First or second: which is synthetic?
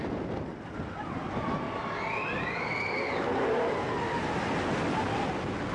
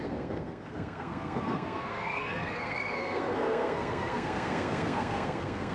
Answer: second